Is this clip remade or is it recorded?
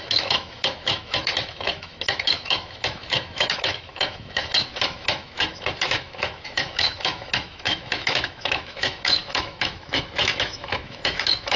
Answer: remade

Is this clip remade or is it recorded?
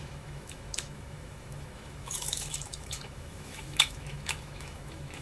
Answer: remade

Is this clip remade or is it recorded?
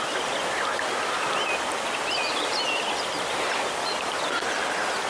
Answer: recorded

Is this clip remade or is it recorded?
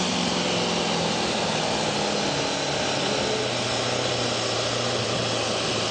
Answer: recorded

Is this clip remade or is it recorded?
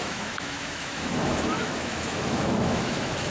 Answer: remade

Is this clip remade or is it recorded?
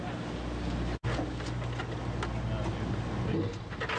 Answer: recorded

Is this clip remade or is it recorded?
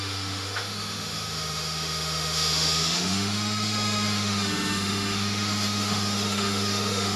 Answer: remade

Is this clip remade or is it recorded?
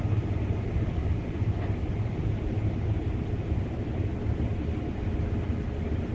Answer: recorded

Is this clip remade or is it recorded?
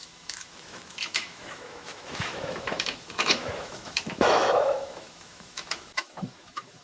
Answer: remade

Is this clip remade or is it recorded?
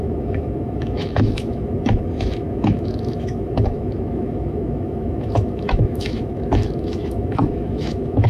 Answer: remade